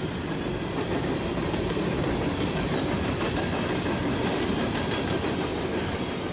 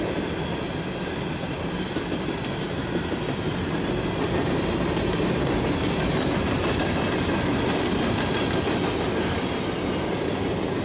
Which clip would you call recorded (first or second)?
second